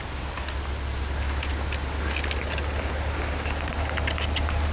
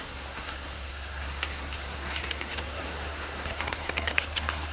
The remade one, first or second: second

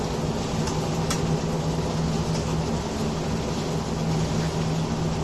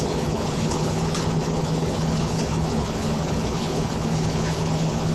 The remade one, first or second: second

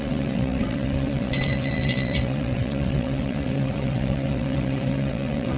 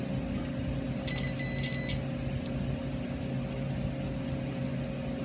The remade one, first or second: first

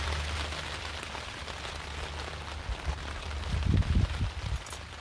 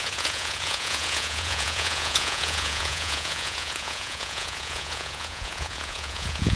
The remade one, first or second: second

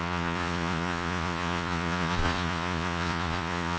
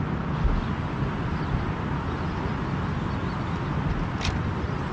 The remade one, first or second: first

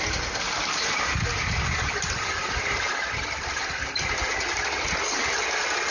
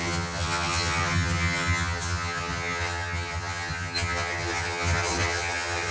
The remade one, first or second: second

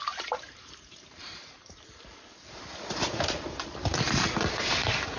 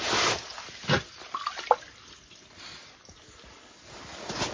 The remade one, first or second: first